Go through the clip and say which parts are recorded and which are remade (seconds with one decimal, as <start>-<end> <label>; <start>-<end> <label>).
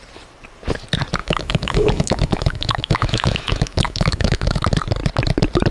0.0-1.2 recorded; 1.2-4.6 remade; 4.6-5.7 recorded